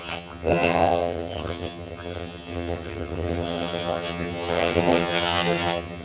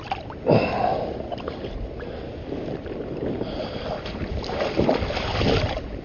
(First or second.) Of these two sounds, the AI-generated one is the first